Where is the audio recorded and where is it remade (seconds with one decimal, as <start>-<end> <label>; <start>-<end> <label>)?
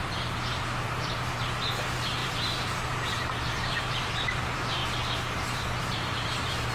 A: 0.0-1.8 recorded; 1.8-4.8 remade; 4.8-5.8 recorded; 5.8-6.7 remade